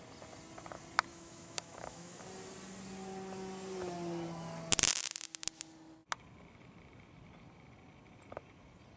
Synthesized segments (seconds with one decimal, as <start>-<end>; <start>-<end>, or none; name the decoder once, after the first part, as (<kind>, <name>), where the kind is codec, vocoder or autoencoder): 1.1-2.2 (autoencoder, DAC-VAE)